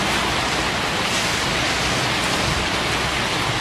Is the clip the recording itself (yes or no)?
yes